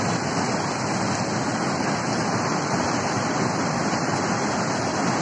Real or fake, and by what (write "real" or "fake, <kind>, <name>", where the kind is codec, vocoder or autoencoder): real